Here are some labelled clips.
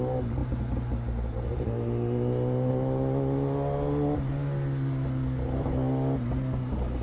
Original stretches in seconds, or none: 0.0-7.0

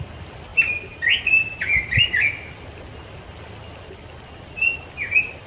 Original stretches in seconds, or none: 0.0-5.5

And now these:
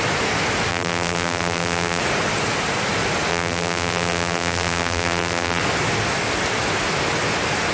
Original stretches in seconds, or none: 0.0-0.7; 2.0-3.3; 5.6-7.7